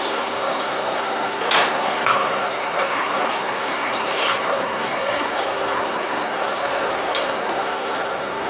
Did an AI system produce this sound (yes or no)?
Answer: yes